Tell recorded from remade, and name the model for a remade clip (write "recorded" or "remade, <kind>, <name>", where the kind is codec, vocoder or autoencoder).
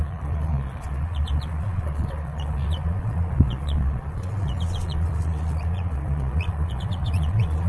remade, vocoder, Vocos